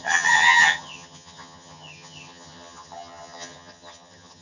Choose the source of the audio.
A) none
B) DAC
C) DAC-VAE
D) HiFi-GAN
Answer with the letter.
D